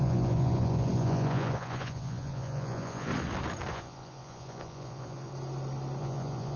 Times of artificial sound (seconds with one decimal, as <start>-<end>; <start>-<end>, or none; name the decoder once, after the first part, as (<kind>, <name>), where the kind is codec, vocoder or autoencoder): 0.0-3.1 (vocoder, Vocos); 3.7-5.3; 6.0-6.6